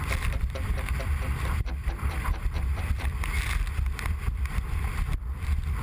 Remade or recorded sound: remade